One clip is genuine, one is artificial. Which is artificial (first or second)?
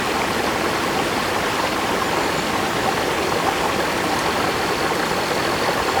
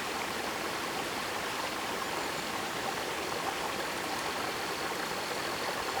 second